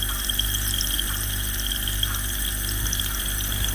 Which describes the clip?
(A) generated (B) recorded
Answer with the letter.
B